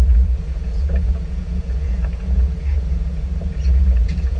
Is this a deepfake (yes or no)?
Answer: yes